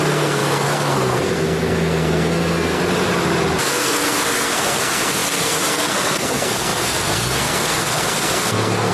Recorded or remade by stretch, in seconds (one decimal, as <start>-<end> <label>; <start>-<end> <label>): 0.0-2.8 remade; 2.8-3.6 recorded; 3.6-8.9 remade